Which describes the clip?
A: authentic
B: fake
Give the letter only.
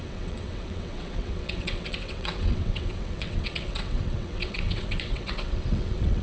B